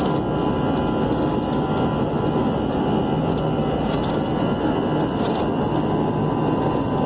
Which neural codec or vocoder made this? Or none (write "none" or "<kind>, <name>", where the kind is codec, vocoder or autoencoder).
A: none